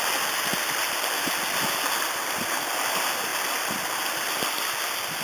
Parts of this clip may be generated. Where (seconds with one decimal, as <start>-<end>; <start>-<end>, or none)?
none